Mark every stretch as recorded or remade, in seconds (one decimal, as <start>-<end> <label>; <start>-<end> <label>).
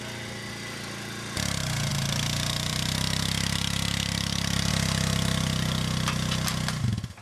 0.0-1.9 recorded; 1.9-4.7 remade; 4.7-7.2 recorded